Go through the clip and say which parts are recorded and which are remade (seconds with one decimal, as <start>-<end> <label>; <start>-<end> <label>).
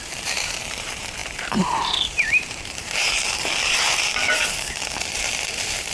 0.0-5.9 remade